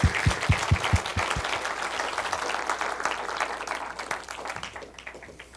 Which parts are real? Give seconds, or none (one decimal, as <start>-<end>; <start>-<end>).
0.0-5.6